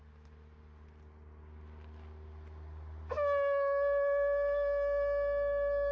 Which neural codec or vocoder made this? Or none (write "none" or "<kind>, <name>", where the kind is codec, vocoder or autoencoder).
none